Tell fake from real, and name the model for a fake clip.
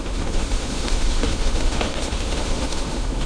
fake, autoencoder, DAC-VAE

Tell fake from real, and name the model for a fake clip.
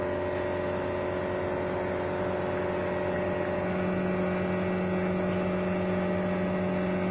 real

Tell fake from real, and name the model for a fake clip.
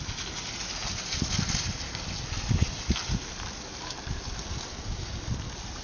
real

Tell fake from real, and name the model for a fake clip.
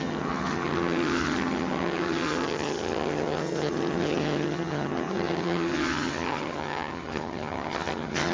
fake, vocoder, HiFi-GAN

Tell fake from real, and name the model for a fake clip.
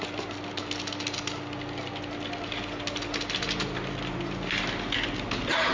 real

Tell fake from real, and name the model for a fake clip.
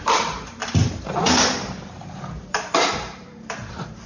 fake, vocoder, BigVGAN v2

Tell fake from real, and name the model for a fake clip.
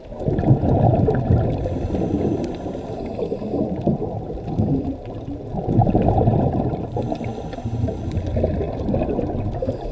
real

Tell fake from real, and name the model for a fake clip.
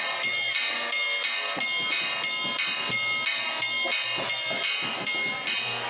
real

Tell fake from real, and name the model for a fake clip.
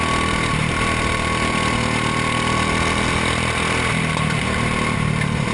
real